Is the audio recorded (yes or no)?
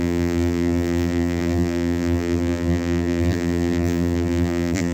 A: no